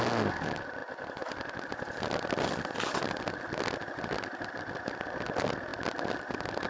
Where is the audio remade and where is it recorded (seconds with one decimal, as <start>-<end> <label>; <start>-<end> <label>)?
0.0-6.7 recorded